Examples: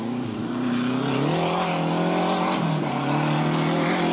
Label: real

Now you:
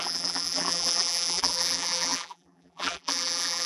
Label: fake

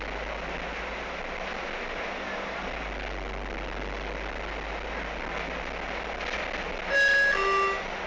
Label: real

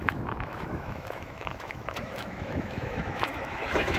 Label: fake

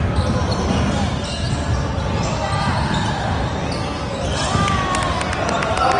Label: real